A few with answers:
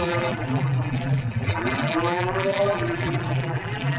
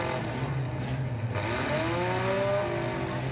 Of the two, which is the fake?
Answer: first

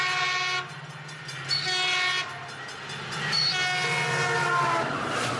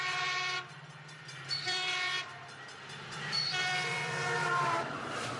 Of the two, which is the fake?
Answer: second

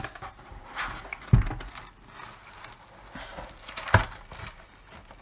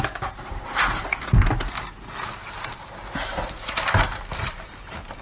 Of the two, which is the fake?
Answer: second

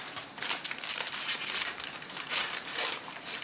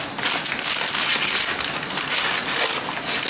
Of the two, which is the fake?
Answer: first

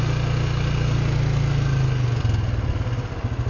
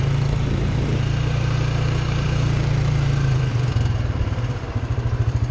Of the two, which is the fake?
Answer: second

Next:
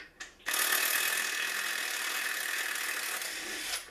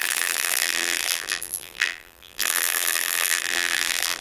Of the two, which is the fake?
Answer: second